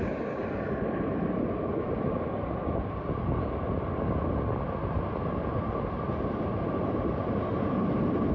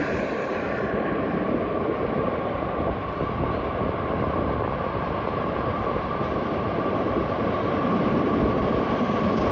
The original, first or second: first